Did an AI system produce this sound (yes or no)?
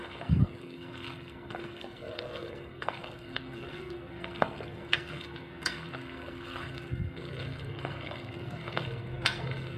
yes